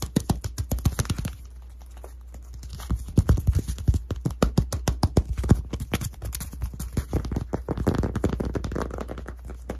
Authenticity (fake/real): real